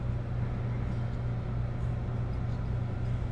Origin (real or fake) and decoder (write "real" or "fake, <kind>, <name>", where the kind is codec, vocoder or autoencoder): real